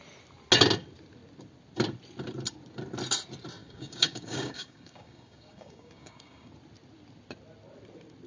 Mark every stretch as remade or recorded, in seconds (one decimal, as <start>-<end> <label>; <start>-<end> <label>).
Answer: 0.0-3.6 recorded; 3.6-6.5 remade; 6.5-8.3 recorded